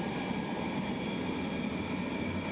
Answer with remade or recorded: recorded